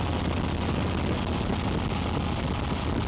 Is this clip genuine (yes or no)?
yes